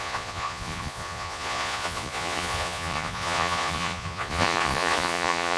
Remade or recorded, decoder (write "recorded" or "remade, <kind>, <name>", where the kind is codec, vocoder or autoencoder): remade, vocoder, Vocos